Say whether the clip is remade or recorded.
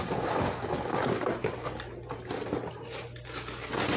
recorded